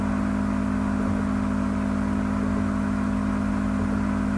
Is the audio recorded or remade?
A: recorded